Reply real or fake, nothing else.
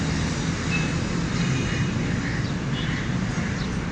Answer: real